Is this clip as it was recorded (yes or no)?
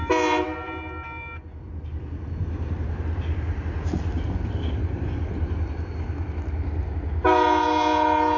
yes